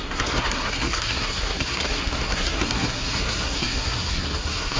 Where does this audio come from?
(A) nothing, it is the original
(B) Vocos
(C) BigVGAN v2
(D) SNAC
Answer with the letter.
D